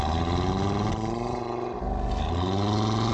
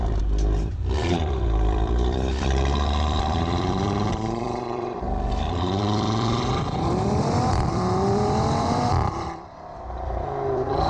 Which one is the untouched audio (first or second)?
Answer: first